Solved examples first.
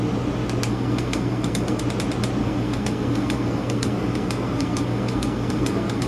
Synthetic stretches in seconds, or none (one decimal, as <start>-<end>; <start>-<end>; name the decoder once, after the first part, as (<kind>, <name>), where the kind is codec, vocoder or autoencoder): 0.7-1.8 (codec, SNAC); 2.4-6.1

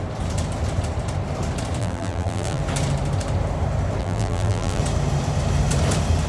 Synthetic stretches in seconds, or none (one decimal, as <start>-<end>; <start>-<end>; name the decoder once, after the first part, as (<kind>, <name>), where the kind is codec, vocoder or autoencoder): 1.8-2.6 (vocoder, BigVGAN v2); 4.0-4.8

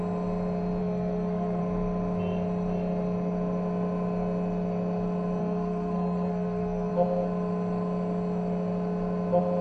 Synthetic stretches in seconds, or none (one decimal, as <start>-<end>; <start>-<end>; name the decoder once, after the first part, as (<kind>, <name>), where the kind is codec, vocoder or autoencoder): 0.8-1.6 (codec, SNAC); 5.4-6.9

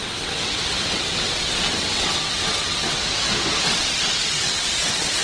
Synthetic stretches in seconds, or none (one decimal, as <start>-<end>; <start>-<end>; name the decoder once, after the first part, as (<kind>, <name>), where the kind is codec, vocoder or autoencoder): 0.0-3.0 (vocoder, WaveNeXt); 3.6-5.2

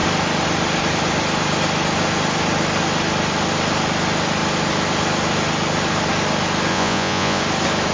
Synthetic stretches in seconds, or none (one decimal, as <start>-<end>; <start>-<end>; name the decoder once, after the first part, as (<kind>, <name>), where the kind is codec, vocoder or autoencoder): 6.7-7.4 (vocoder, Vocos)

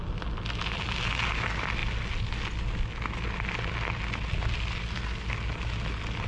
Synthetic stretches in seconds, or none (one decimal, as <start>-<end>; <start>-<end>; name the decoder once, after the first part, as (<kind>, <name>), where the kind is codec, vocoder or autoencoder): none

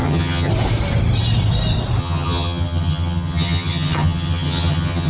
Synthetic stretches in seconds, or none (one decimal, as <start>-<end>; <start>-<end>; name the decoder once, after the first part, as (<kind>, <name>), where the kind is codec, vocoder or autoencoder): 0.0-0.5 (vocoder, HiFi-GAN); 2.0-5.1

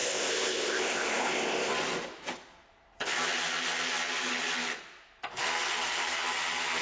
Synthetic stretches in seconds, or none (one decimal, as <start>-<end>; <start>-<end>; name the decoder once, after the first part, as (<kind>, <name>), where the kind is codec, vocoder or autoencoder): 0.0-1.7 (codec, ZipCodec)